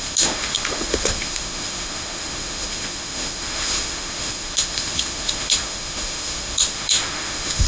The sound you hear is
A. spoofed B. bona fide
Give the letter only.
A